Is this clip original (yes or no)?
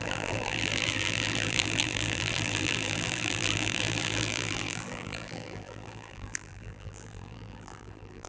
no